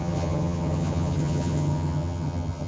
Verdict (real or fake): fake